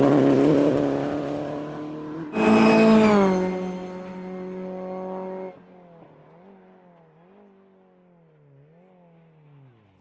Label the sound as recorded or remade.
recorded